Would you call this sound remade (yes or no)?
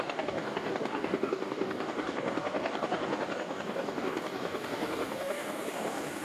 yes